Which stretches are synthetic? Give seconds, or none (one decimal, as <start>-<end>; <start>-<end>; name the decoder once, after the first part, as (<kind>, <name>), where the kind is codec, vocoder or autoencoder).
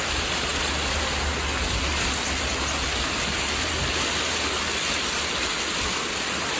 none